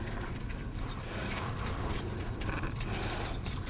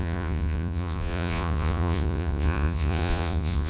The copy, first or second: second